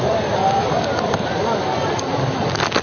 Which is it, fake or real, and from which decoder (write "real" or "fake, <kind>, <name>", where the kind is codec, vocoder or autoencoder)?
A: real